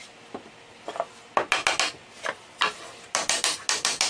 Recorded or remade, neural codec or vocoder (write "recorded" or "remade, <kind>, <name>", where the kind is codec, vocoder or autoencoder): recorded